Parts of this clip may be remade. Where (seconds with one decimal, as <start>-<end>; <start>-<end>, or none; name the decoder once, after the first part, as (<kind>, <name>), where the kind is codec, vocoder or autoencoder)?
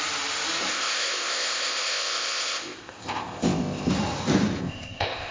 0.7-3.9 (codec, ZipCodec); 4.6-5.3